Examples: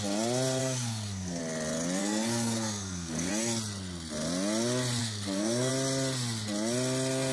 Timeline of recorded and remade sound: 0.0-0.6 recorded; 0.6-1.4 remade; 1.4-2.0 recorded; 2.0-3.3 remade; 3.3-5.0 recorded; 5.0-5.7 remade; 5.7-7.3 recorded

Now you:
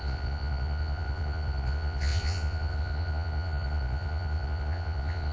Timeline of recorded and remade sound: 0.0-5.3 remade

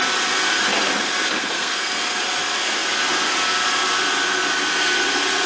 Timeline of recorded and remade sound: 0.0-1.4 recorded; 1.4-2.0 remade; 2.0-5.5 recorded

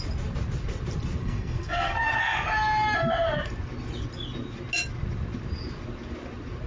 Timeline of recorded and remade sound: 0.0-1.2 recorded; 1.2-2.2 remade; 2.2-6.7 recorded

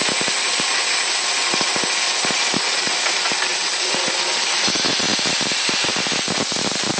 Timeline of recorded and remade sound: 0.0-7.0 recorded